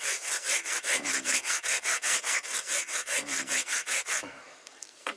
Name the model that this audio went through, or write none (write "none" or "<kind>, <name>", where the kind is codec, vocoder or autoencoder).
codec, SNAC